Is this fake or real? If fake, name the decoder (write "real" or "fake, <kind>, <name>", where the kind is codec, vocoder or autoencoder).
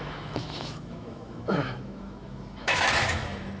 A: fake, autoencoder, DAC-VAE